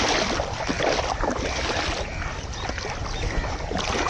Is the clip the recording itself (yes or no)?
yes